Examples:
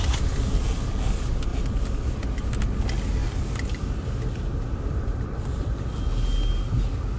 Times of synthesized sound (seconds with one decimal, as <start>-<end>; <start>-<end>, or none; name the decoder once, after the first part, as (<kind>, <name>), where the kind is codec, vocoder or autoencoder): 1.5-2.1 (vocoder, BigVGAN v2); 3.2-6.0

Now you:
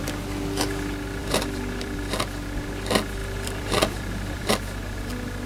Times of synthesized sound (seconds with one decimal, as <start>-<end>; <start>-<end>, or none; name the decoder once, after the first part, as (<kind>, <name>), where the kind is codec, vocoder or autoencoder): 1.2-2.1 (vocoder, BigVGAN v2); 3.2-4.5

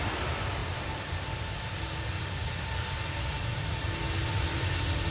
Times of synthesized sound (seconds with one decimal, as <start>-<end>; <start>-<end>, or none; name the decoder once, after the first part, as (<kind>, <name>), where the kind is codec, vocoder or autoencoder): 0.6-1.2 (vocoder, BigVGAN v2)